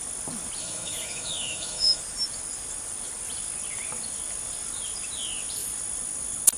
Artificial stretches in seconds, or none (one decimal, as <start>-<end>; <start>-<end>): 0.6-2.0